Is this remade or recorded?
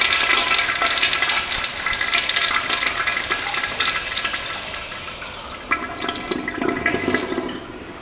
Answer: remade